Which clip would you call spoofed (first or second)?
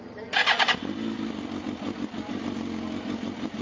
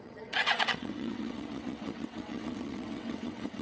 second